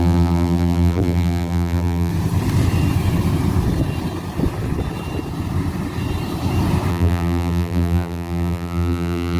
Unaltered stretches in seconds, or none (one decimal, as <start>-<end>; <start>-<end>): 2.1-6.9